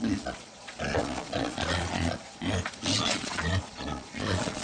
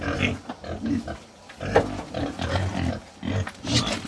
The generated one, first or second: first